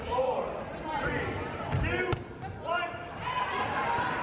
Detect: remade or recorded recorded